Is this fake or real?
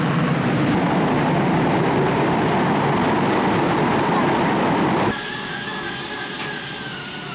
real